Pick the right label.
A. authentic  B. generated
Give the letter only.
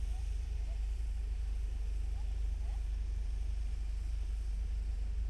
B